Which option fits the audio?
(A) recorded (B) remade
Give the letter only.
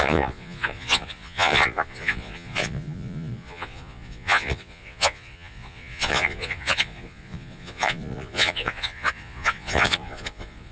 B